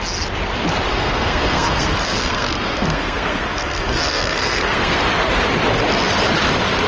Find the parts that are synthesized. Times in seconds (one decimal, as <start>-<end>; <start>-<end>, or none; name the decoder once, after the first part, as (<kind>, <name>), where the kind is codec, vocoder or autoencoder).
0.9-5.0 (codec, SNAC)